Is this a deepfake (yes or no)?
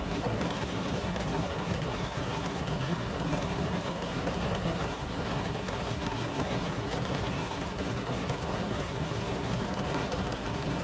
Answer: yes